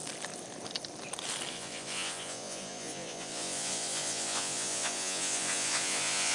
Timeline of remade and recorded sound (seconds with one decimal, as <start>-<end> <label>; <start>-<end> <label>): 0.0-1.5 recorded; 1.5-6.3 remade